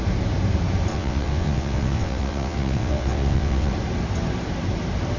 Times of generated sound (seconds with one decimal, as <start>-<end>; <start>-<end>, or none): 0.9-3.7

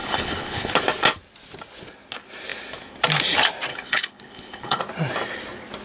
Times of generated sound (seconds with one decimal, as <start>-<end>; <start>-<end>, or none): 0.0-0.7; 3.7-4.8

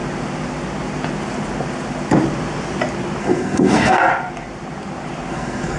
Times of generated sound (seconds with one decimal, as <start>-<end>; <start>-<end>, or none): 3.2-4.1; 5.3-5.8

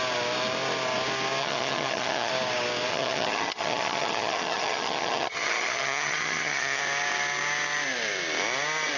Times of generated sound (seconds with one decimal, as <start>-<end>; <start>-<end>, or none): 1.4-2.3; 2.9-6.8

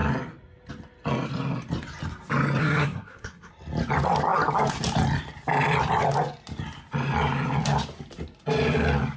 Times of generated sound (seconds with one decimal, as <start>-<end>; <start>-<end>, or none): 2.6-3.5

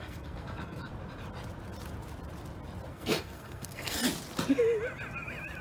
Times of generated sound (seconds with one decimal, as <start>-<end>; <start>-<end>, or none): 0.0-0.9; 2.9-4.0

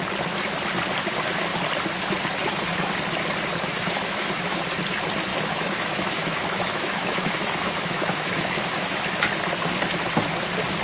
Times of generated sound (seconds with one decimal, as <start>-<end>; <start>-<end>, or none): 3.7-4.6; 5.3-9.0

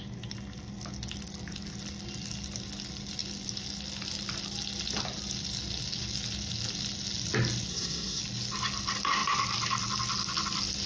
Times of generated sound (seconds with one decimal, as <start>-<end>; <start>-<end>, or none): 7.7-8.2